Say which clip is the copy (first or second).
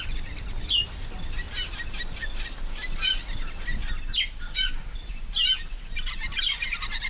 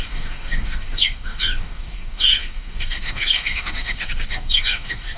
second